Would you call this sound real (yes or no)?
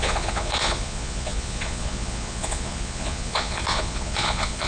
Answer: no